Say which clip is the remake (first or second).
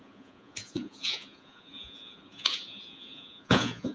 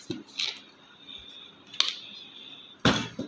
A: first